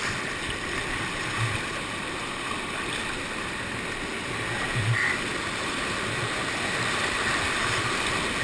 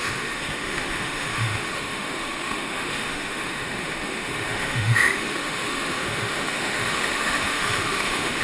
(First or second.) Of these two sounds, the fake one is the second